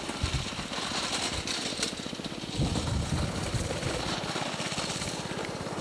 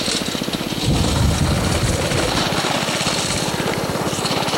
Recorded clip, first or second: second